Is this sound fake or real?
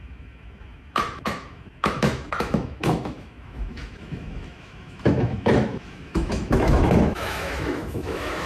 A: fake